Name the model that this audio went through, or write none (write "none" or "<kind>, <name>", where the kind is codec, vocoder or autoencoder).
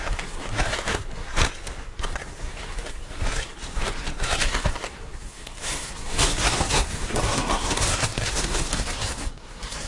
codec, SNAC